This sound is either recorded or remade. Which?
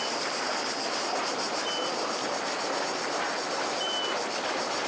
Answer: recorded